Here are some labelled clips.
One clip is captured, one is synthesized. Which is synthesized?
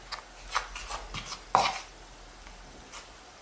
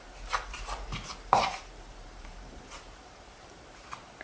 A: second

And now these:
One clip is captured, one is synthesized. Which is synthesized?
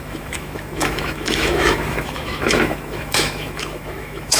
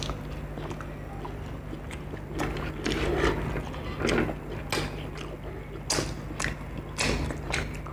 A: first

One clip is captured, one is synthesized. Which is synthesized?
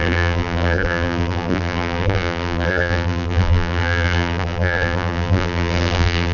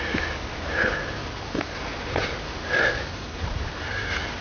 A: first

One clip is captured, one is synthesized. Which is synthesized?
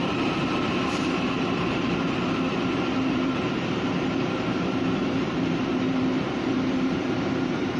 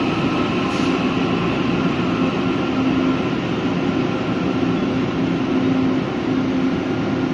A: first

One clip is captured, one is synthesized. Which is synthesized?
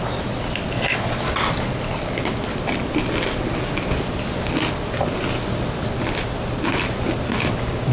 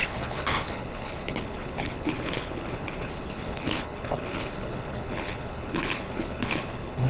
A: second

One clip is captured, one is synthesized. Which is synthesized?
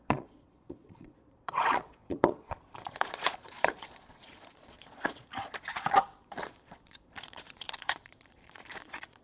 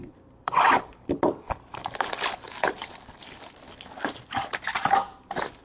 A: first